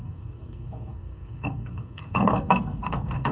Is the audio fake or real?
fake